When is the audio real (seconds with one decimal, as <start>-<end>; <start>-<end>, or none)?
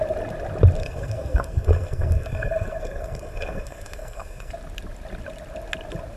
0.0-0.8; 4.5-6.2